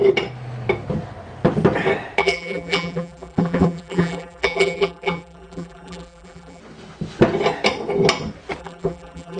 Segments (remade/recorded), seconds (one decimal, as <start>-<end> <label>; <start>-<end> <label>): 0.0-2.2 recorded; 2.2-6.6 remade; 6.6-8.6 recorded; 8.6-9.4 remade